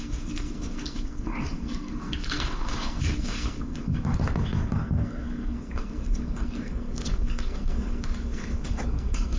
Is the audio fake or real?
fake